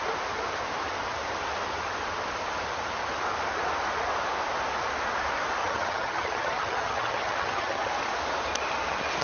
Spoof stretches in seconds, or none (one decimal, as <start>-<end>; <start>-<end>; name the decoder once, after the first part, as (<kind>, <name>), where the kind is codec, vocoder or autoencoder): 5.6-7.9 (vocoder, HiFi-GAN)